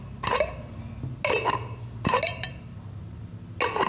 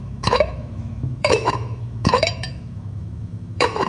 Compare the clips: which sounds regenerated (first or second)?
second